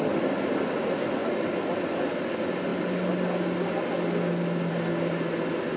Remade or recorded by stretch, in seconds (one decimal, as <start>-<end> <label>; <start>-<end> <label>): 0.0-5.8 recorded